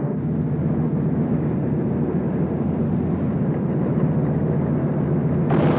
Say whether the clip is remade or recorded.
recorded